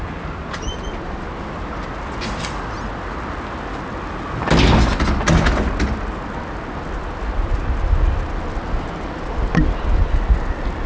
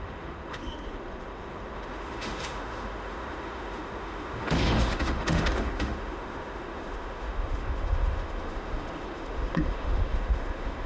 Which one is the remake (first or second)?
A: second